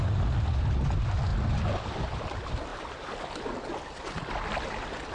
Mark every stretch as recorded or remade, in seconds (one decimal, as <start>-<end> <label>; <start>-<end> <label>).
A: 0.0-5.1 recorded